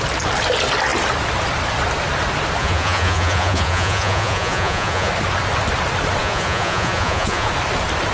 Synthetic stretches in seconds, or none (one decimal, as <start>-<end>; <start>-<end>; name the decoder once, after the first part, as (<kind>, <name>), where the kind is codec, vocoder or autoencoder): 2.6-5.1 (vocoder, Vocos); 6.2-7.5